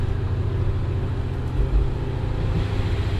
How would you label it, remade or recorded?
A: recorded